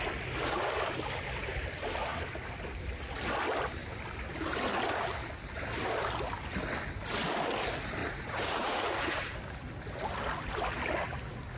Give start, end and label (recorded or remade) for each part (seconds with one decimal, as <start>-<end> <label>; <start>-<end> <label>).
0.0-8.0 recorded; 8.0-9.3 remade; 9.3-11.6 recorded